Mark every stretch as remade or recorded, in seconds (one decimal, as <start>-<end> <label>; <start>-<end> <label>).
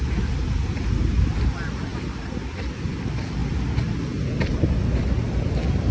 0.0-5.9 recorded